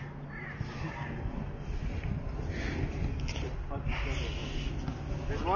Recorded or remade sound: recorded